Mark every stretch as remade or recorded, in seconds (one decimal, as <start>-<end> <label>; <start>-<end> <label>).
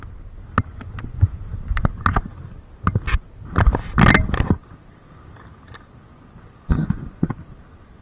0.0-0.7 recorded; 0.7-1.6 remade; 1.6-6.1 recorded; 6.1-7.5 remade; 7.5-8.0 recorded